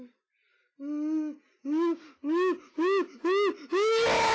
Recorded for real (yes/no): yes